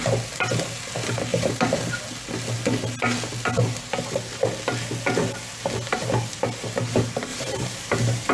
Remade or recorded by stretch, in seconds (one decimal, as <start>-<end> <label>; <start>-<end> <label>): 0.0-1.3 recorded; 1.3-2.0 remade; 2.0-7.3 recorded; 7.3-8.3 remade